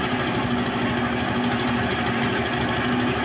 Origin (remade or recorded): recorded